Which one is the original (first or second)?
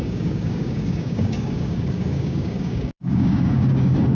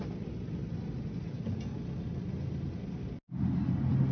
second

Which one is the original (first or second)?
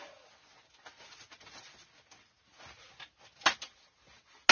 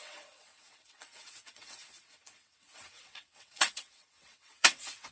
first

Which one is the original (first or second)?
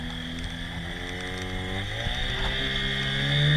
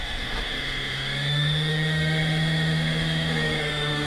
first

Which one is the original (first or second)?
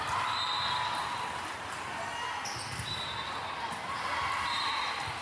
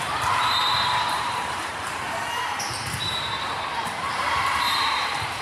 first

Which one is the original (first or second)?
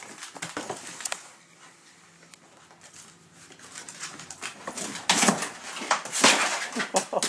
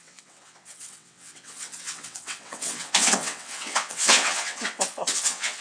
first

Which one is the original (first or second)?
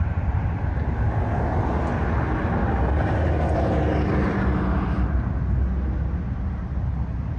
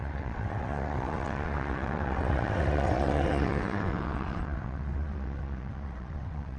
first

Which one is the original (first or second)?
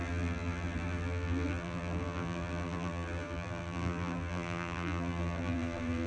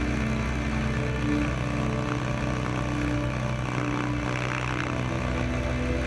second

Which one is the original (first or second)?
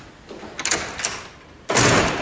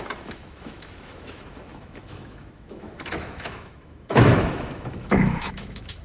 first